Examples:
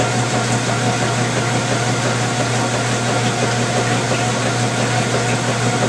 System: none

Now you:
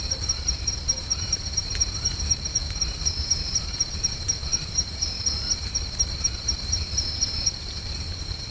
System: vocoder, BigVGAN v2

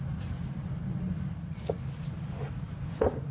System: none